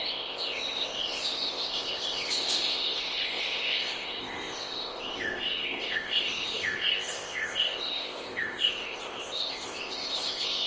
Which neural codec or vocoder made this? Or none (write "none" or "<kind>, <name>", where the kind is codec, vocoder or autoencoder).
codec, ZipCodec